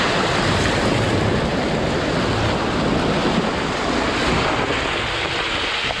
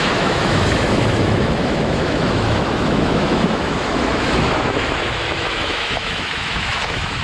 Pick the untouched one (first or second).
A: first